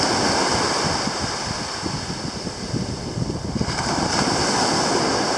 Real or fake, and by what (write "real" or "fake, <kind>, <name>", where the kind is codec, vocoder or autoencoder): real